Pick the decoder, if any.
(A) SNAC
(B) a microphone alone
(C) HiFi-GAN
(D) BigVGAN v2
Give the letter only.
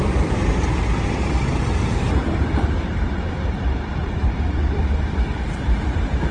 D